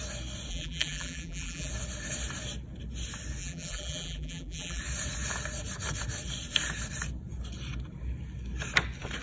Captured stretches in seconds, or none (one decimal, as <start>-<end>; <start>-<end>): 0.0-0.5; 1.7-3.4; 4.8-9.2